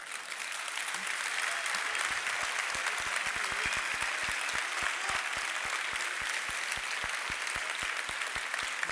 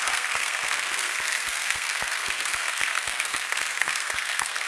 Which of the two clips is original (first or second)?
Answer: first